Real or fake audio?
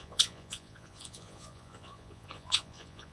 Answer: fake